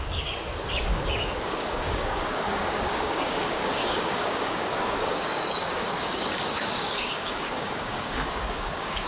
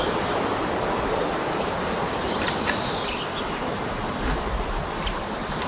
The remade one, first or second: first